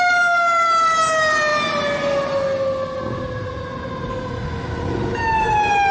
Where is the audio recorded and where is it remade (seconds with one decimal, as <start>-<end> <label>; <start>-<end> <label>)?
0.0-5.9 recorded